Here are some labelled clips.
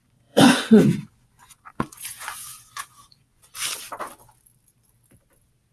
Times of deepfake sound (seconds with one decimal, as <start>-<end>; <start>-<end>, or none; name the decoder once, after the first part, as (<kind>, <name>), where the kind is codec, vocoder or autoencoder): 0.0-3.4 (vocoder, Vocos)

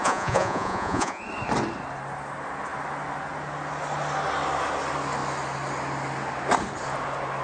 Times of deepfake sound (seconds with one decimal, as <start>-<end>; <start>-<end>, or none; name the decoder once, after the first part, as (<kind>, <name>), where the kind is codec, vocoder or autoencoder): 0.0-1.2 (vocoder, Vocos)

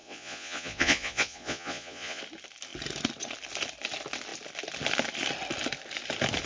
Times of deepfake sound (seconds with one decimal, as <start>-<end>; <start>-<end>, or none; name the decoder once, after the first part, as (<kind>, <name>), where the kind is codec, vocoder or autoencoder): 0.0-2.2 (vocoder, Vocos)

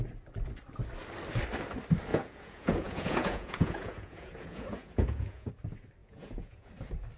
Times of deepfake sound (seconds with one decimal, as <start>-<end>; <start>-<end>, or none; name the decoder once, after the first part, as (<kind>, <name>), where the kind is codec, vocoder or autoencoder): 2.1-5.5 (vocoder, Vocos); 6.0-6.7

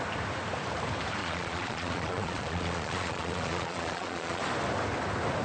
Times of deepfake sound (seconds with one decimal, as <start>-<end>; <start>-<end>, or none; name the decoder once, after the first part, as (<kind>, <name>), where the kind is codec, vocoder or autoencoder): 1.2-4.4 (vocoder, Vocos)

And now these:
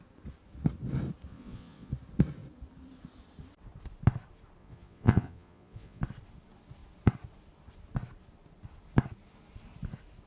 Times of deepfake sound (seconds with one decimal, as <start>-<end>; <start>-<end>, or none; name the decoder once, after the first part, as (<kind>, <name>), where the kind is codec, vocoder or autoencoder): 1.3-1.9 (vocoder, Vocos); 4.6-6.0

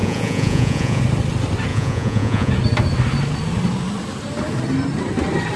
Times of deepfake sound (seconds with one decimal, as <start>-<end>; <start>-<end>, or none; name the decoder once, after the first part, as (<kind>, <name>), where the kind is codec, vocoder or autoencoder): 0.0-1.0 (vocoder, Vocos); 1.7-2.5

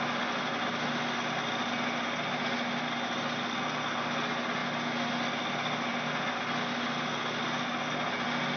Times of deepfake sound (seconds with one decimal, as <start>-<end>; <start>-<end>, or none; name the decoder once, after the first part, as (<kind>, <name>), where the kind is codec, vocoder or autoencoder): none